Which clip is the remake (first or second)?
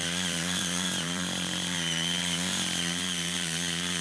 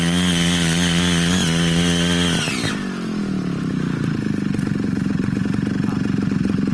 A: first